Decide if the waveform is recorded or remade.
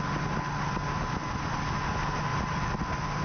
recorded